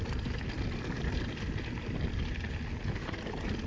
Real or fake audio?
real